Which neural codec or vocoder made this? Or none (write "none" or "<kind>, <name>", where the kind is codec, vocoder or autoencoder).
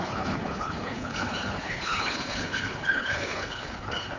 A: codec, HILCodec